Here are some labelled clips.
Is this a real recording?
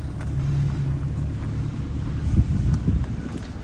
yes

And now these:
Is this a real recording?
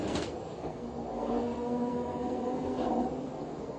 no